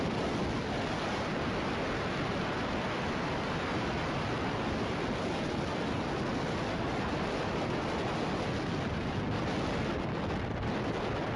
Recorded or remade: recorded